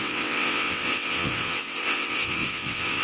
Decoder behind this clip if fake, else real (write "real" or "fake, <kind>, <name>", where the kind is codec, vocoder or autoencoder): fake, vocoder, WaveNeXt